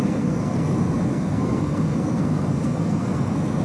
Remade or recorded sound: remade